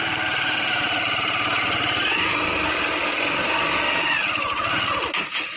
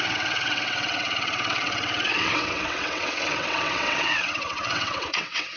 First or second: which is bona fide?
first